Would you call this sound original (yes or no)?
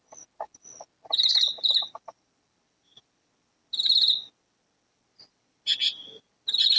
yes